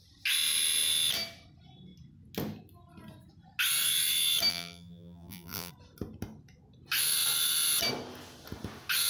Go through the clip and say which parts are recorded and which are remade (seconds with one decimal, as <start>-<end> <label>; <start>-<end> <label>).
0.0-4.5 recorded; 4.5-5.7 remade; 5.7-9.1 recorded